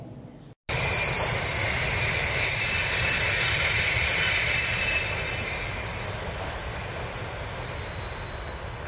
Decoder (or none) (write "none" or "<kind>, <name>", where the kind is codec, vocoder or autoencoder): none